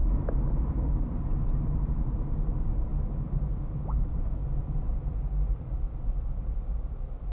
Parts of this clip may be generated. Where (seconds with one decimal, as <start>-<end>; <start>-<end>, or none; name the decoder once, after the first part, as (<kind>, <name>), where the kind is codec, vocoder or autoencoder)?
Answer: 0.0-2.9 (vocoder, BigVGAN v2); 3.5-7.3